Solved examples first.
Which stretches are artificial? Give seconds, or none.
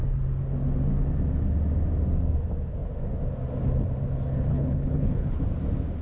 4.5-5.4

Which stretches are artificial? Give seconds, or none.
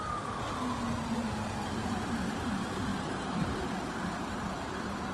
none